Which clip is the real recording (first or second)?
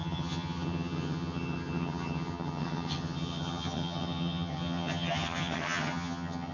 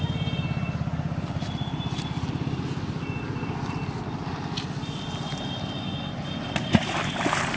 second